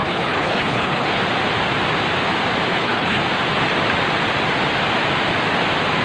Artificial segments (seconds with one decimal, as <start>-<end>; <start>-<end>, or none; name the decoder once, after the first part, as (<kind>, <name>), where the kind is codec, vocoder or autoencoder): 0.0-1.2 (codec, HILCodec); 2.7-3.2